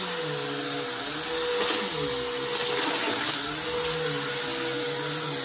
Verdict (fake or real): real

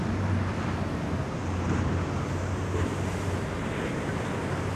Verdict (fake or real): real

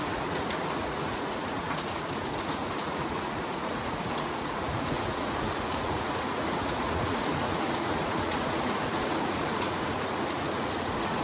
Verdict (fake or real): fake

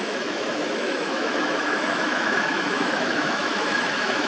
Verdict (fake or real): fake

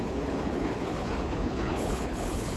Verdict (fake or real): fake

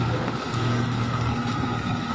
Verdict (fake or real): fake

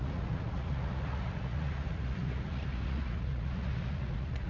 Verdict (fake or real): fake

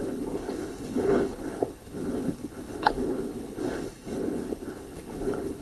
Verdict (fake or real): fake